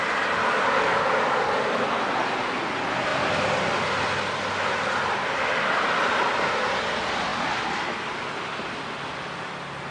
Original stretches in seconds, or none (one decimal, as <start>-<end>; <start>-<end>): 0.0-0.4; 1.5-9.9